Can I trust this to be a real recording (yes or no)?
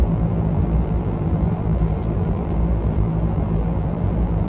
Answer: no